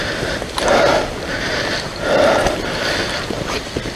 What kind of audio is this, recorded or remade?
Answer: recorded